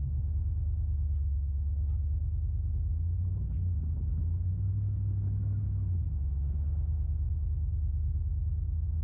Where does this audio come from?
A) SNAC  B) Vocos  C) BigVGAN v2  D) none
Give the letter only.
D